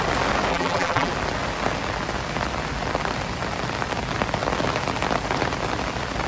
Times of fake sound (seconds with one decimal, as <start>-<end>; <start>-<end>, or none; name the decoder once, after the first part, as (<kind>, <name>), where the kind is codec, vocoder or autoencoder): 0.5-1.1 (vocoder, BigVGAN v2)